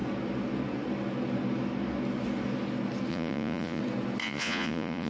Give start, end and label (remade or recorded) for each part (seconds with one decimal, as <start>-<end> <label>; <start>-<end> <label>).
0.0-3.1 recorded; 3.1-3.8 remade; 3.8-4.2 recorded; 4.2-5.1 remade